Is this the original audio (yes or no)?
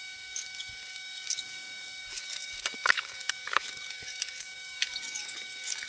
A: no